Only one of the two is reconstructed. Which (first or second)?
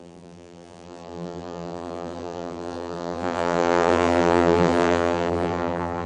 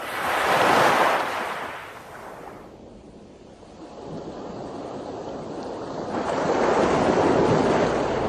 first